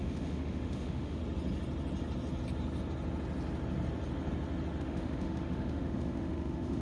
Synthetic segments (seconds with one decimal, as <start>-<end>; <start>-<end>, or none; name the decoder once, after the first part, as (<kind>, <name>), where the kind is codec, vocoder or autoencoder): 0.0-1.2 (autoencoder, DAC-VAE); 4.8-6.8

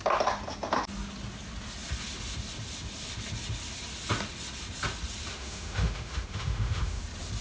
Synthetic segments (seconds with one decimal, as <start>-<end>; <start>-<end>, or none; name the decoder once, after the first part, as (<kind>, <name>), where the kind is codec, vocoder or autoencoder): 5.3-7.0 (autoencoder, DAC-VAE)